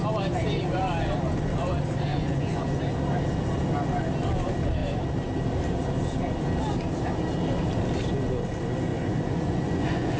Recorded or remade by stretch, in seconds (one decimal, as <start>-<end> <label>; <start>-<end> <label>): 0.0-2.1 recorded; 2.1-2.8 remade; 2.8-8.9 recorded; 8.9-10.2 remade